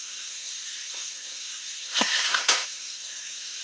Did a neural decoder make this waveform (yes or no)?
yes